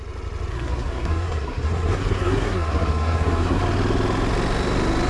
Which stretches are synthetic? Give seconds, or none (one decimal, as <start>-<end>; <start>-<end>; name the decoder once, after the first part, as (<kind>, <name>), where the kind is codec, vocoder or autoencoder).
0.5-3.6 (codec, SNAC)